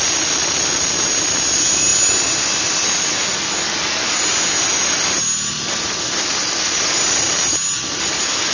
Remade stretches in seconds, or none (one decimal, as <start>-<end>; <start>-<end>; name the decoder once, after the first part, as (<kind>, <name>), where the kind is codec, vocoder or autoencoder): none